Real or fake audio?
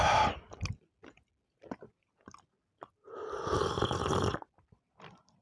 real